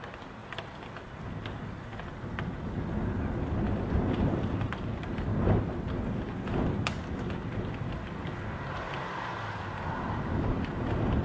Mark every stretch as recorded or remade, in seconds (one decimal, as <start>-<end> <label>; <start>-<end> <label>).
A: 0.0-11.2 recorded